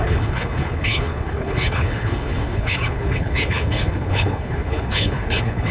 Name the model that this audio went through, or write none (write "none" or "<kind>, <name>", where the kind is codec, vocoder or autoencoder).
codec, HILCodec